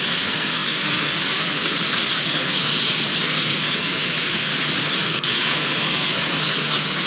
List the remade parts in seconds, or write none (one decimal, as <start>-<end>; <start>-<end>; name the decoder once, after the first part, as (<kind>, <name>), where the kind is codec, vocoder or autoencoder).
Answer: 0.0-4.5 (codec, SNAC); 5.0-7.1